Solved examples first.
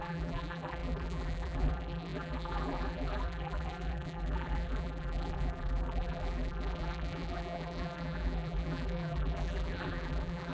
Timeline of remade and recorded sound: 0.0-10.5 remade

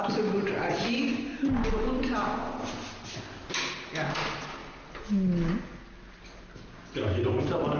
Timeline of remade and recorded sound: 0.0-1.3 recorded; 1.3-2.7 remade; 2.7-7.8 recorded

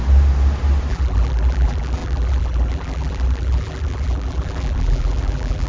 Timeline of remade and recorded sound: 0.0-0.9 recorded; 0.9-5.7 remade

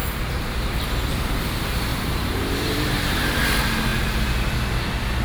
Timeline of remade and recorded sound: 0.0-0.7 remade; 0.7-1.9 recorded; 1.9-3.4 remade; 3.4-5.2 recorded

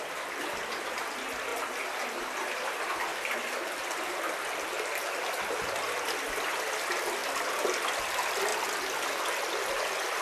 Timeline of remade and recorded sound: 0.0-10.2 recorded